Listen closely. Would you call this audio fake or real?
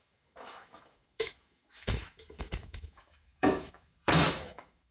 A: fake